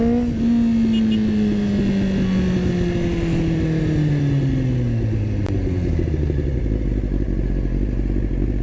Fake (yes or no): no